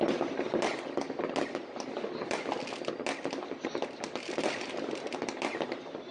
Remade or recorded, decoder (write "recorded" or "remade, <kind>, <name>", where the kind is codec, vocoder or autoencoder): recorded